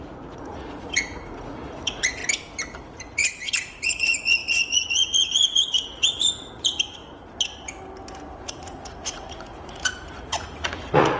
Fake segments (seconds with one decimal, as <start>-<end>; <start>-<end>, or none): 0.0-2.2; 2.8-7.0; 8.3-11.2